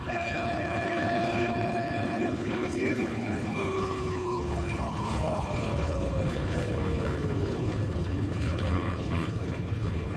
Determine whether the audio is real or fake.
fake